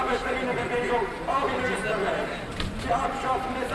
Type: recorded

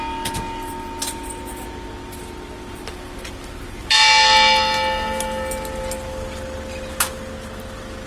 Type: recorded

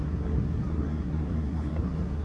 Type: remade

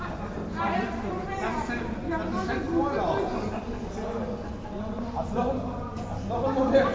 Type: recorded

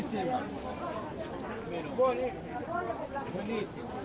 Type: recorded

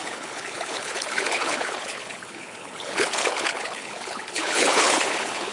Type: remade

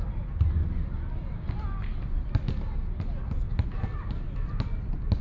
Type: recorded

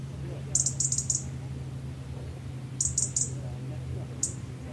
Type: recorded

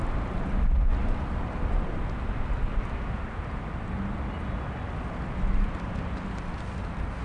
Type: recorded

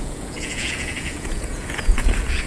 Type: remade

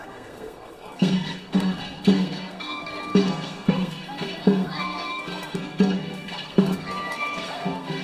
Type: remade